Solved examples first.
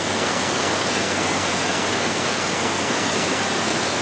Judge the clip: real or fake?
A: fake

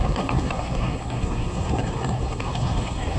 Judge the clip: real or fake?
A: fake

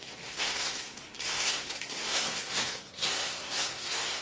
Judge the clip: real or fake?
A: fake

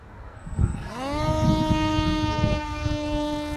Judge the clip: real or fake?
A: fake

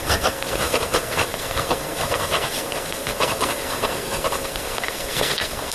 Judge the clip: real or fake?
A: fake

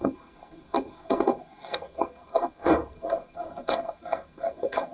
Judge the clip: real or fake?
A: fake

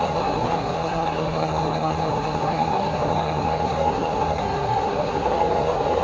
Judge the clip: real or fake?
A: fake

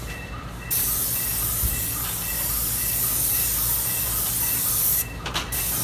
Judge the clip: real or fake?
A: real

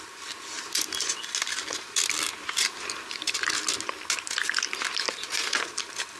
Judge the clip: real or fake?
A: real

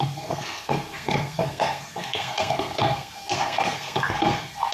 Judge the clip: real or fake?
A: fake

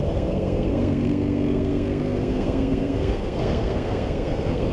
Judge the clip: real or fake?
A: fake